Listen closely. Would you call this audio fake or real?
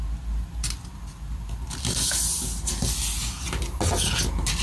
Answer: real